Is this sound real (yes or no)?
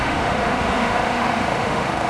no